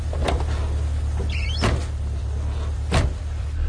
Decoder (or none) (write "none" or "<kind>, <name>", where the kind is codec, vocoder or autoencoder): none